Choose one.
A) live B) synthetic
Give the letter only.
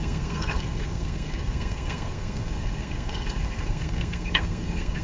B